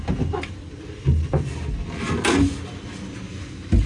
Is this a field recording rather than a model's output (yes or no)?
yes